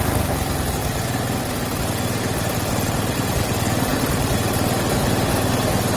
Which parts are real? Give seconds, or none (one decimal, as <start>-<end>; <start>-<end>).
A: 3.9-6.0